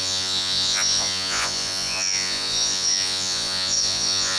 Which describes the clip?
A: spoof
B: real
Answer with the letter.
A